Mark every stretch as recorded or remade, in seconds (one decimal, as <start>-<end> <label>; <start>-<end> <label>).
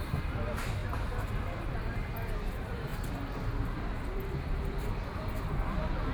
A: 0.0-0.8 remade; 0.8-1.7 recorded; 1.7-2.9 remade; 2.9-4.2 recorded; 4.2-6.1 remade